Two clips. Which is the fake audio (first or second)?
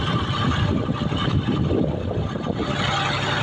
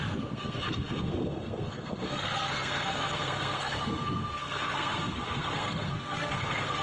second